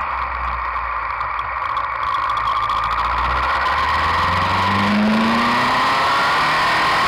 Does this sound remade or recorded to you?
recorded